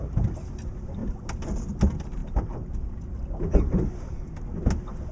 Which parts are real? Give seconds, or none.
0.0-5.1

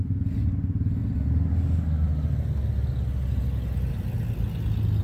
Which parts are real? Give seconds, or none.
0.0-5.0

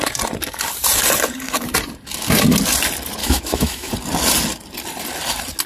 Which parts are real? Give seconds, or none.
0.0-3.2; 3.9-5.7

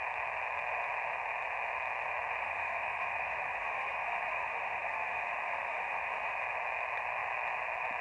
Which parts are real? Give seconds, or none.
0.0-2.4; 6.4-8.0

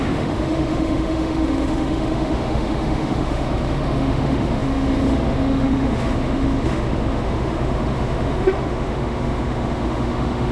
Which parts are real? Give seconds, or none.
none

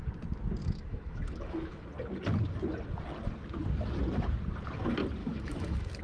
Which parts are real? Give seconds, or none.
0.0-0.6; 1.9-5.2

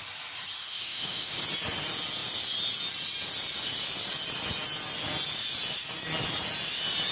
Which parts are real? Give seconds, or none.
0.0-0.6; 1.4-7.1